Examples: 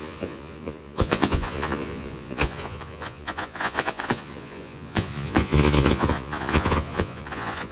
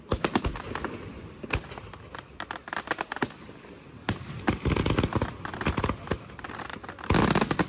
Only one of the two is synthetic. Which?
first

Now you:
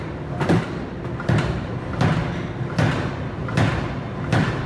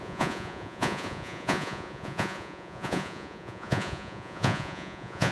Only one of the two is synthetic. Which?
second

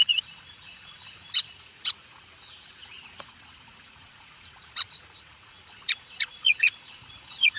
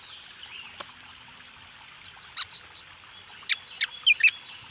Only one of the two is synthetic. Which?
first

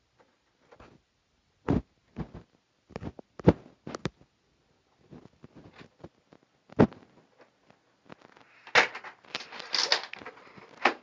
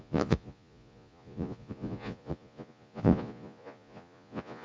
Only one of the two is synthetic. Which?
second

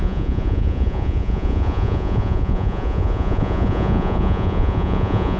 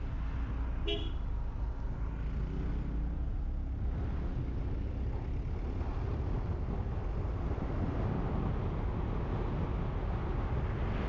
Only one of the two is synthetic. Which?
first